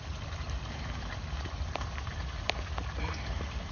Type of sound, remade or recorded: recorded